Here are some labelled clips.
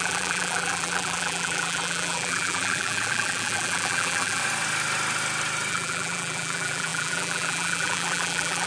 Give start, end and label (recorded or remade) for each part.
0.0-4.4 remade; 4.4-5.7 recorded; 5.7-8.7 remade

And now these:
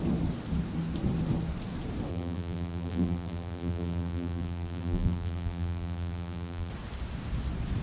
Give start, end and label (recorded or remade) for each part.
0.0-2.1 recorded; 2.1-6.7 remade; 6.7-7.8 recorded

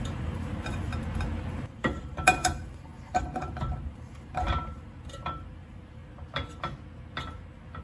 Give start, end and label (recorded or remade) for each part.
0.0-0.9 remade; 0.9-1.7 recorded; 1.7-6.0 remade; 6.0-7.8 recorded